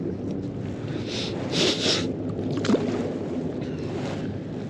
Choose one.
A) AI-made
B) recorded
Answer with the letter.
B